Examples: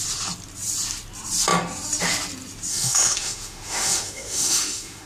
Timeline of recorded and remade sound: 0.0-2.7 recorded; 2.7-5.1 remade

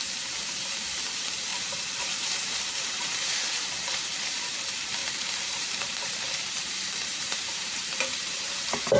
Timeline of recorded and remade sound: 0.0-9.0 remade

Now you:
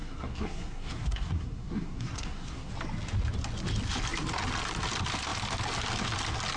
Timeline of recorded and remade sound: 0.0-2.7 remade; 2.7-6.6 recorded